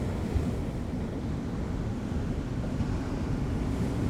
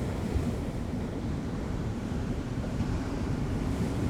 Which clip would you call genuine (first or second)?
first